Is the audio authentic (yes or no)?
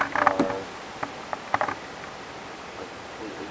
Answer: yes